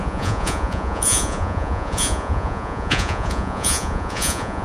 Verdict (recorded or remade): remade